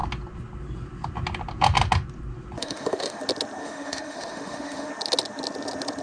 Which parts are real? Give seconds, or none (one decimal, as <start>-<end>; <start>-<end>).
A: 0.0-2.6; 3.2-3.6; 4.9-6.0